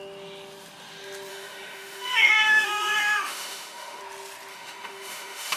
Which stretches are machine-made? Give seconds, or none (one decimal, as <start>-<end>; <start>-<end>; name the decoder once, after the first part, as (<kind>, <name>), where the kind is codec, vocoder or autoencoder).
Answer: 1.3-4.0 (autoencoder, DAC-VAE); 4.5-5.6